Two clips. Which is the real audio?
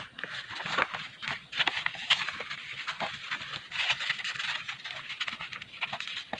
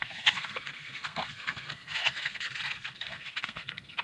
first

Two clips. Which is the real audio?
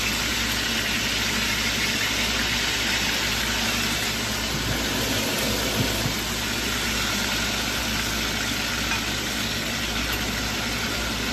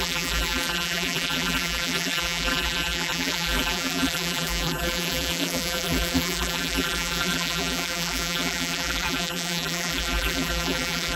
first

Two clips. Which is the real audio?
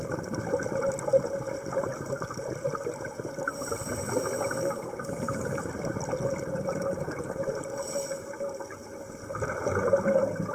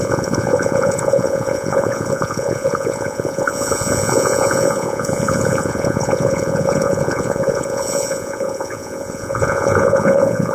first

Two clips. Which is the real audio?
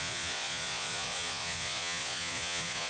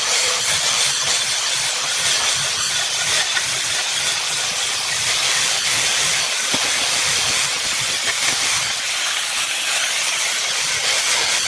second